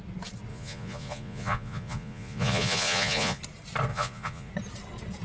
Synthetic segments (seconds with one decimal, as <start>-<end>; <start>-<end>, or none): 0.5-3.4; 3.9-4.5